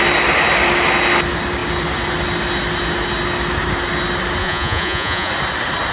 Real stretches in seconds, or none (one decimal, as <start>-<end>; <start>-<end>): 0.0-4.4; 5.3-5.9